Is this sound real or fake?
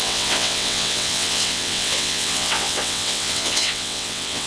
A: fake